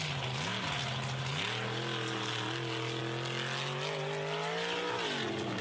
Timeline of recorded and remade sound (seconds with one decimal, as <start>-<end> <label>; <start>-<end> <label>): 0.0-5.6 recorded